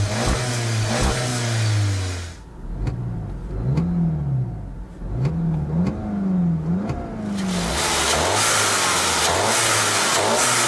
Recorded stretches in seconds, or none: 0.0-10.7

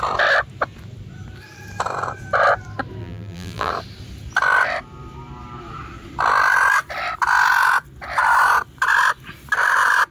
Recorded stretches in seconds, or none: 0.0-3.0; 3.7-10.1